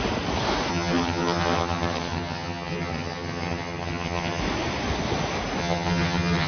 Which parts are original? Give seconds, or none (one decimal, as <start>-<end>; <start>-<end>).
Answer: 0.0-0.7; 4.4-5.6